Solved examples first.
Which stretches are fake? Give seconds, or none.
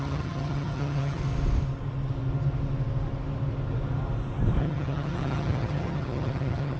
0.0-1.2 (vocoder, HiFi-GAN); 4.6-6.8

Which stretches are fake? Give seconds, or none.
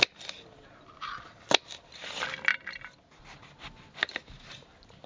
none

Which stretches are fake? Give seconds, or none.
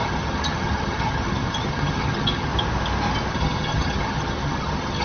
0.0-2.5 (vocoder, HiFi-GAN); 3.3-5.0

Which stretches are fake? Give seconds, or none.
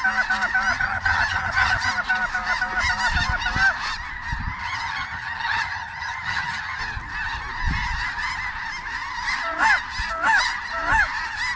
0.7-1.9 (vocoder, HiFi-GAN); 4.6-6.8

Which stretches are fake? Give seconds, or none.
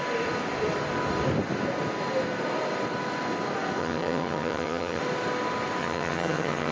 3.8-5.0 (vocoder, HiFi-GAN); 5.8-6.7